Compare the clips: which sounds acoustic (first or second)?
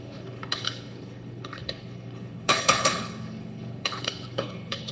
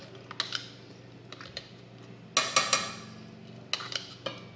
second